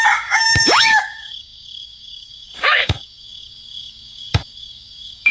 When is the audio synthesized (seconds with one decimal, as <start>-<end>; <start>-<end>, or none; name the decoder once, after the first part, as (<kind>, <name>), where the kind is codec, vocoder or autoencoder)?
0.0-5.3 (codec, DAC)

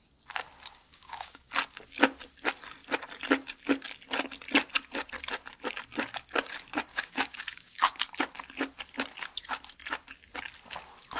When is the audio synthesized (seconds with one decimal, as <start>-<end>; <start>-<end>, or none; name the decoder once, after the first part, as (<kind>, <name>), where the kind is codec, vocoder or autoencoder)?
0.9-1.5 (codec, DAC); 6.9-8.0

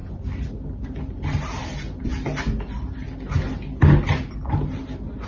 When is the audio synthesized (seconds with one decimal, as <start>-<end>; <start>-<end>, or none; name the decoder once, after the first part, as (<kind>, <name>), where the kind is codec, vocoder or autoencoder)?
none

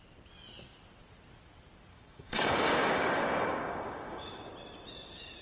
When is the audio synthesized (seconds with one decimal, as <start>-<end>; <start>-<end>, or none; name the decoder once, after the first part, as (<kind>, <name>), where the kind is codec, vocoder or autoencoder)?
1.9-4.5 (codec, DAC)

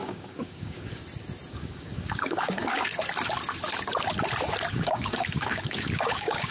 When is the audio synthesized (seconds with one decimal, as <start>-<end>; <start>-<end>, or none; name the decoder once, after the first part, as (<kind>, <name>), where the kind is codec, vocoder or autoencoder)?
0.0-1.0 (codec, DAC); 1.5-2.9; 4.7-6.5